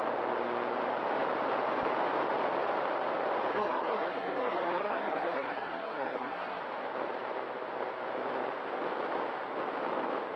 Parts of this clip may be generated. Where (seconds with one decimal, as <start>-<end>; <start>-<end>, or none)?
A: 3.5-6.6